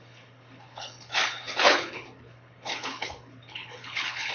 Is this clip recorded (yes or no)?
no